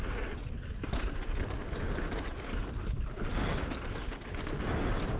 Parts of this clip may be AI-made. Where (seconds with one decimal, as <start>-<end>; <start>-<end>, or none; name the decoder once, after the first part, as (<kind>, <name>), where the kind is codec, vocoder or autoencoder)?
none